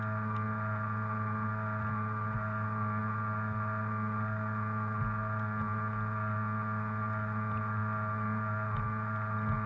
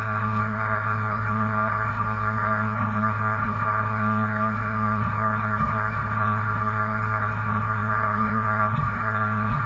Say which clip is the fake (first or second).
second